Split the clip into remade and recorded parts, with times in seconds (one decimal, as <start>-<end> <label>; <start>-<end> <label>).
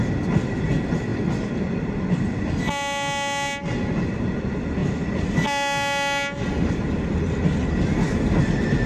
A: 0.0-8.9 recorded